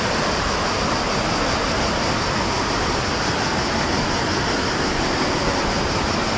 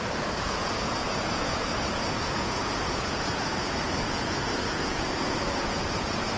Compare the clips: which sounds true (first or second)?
first